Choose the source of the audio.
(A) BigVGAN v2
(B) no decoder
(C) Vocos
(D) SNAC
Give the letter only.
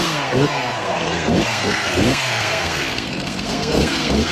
D